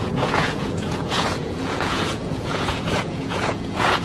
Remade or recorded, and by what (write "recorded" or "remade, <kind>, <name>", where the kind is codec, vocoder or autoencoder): remade, vocoder, Vocos